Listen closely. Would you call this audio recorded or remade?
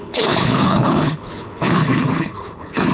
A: remade